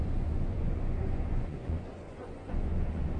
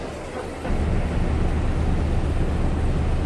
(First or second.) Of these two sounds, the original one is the second